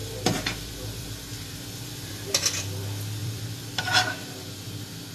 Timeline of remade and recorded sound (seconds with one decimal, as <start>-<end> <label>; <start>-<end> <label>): 0.0-2.3 remade; 2.3-3.2 recorded; 3.2-3.8 remade; 3.8-5.1 recorded